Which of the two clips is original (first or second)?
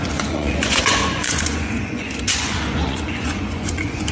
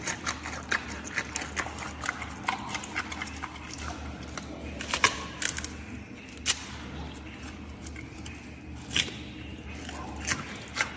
second